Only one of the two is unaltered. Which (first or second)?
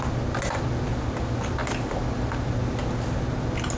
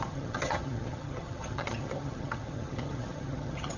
first